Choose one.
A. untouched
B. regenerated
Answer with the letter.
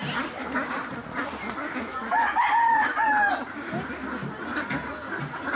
A